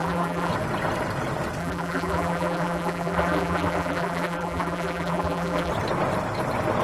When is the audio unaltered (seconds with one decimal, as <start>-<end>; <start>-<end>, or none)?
0.5-1.6; 5.7-6.8